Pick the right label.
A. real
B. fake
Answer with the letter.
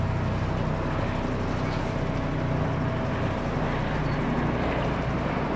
A